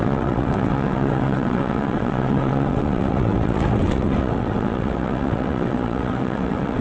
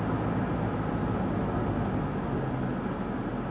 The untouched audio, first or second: second